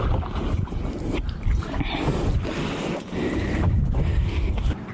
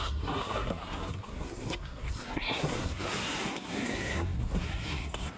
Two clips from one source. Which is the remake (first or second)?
second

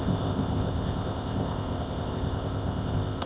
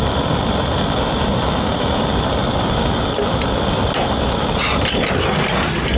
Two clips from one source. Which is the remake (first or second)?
first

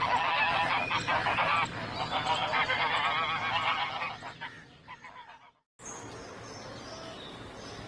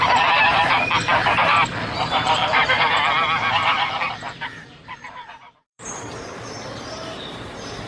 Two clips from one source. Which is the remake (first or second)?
second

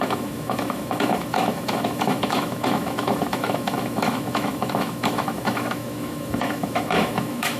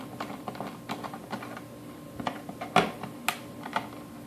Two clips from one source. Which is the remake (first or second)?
first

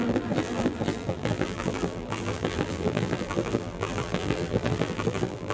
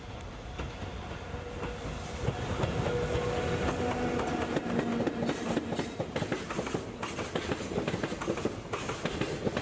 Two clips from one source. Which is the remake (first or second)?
first